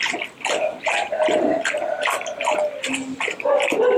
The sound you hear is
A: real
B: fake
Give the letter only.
A